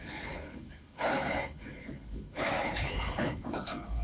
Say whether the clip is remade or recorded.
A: remade